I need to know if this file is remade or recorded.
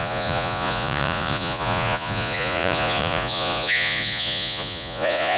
remade